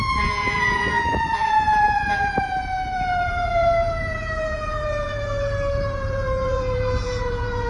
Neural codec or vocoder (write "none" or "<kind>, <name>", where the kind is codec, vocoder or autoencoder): vocoder, Vocos